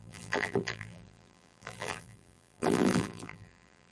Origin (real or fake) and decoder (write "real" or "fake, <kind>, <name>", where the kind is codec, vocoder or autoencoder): fake, vocoder, BigVGAN v2